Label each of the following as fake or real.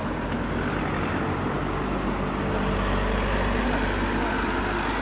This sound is real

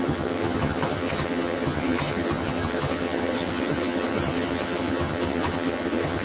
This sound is fake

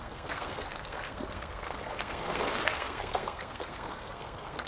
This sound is fake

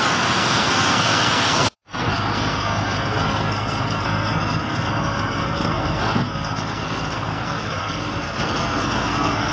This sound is fake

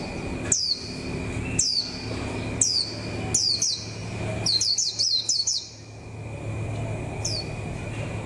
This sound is real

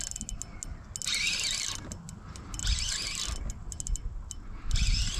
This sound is real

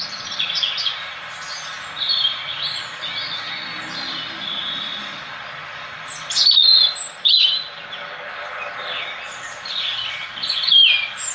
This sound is real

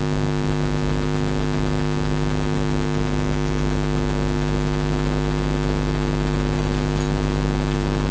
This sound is real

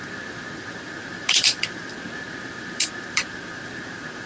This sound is fake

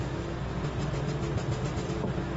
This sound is real